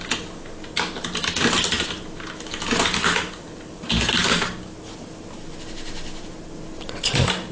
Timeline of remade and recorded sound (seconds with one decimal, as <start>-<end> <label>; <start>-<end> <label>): 0.0-7.5 recorded